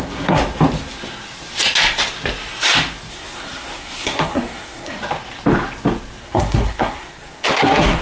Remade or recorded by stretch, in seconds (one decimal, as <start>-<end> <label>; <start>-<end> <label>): 0.0-0.4 remade; 0.4-3.1 recorded; 3.1-5.0 remade; 5.0-6.2 recorded; 6.2-8.0 remade